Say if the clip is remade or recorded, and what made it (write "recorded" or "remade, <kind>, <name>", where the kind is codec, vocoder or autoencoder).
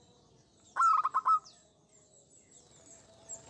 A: recorded